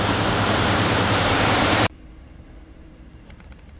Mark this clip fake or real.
fake